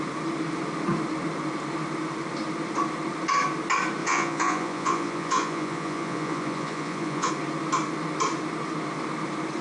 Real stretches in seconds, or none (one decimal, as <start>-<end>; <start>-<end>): 0.0-4.0; 7.3-9.6